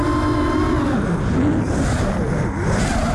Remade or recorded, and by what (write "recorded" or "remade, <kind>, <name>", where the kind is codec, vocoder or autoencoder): recorded